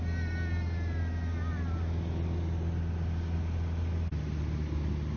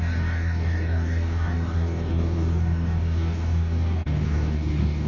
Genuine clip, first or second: first